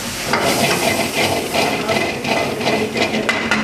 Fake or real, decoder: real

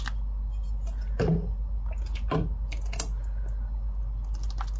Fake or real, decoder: real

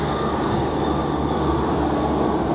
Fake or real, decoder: fake, codec, DAC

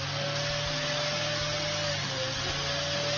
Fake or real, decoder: real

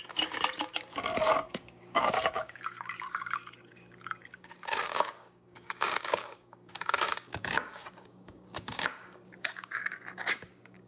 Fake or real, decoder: fake, codec, DAC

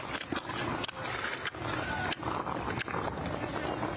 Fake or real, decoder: real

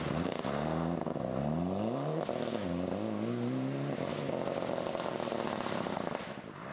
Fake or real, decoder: real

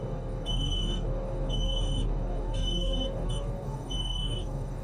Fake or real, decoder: fake, codec, DAC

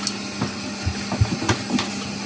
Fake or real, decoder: real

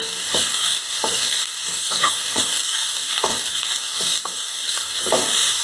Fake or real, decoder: fake, codec, DAC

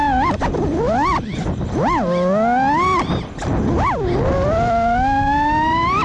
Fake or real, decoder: real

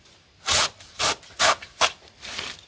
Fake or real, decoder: real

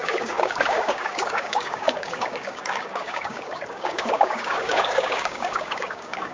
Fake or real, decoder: fake, codec, DAC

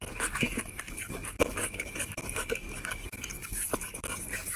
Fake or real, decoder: fake, codec, DAC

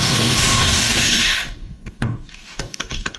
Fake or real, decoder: fake, codec, DAC